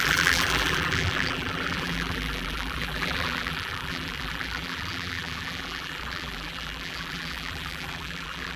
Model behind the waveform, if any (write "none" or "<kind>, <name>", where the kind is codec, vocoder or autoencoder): vocoder, BigVGAN v2